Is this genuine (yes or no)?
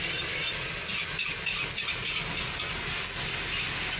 yes